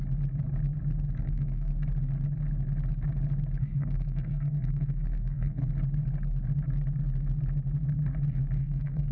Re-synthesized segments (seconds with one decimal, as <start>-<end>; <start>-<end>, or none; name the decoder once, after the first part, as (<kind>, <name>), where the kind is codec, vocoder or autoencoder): 1.2-1.7 (codec, SNAC); 3.6-5.6; 8.6-9.1